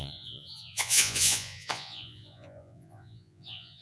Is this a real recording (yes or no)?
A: no